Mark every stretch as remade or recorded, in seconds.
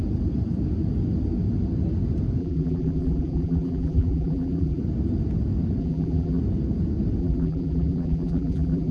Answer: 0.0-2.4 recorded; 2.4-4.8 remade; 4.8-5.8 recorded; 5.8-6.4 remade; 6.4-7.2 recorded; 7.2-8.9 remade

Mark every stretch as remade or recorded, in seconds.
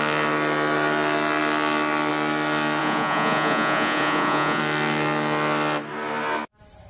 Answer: 0.0-2.8 recorded; 2.8-4.6 remade; 4.6-6.9 recorded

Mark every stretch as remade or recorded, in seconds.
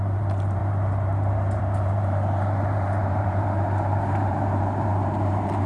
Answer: 0.0-5.7 remade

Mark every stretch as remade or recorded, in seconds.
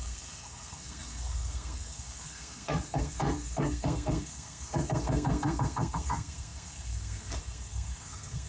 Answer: 0.0-8.5 remade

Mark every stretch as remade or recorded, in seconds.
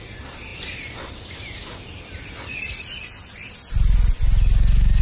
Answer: 0.0-0.5 recorded; 0.5-3.5 remade; 3.5-5.0 recorded